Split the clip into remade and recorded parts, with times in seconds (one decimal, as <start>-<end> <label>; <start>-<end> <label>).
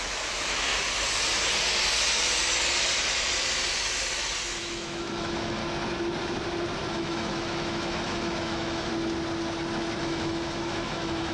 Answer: 0.0-0.7 remade; 0.7-4.4 recorded; 4.4-5.6 remade; 5.6-6.9 recorded; 6.9-8.9 remade; 8.9-10.0 recorded; 10.0-11.3 remade